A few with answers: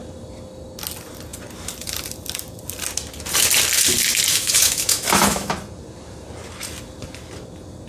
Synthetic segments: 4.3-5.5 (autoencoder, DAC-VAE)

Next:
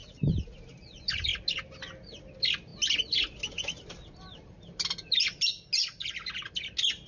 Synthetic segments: none